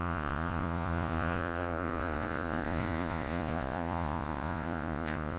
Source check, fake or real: fake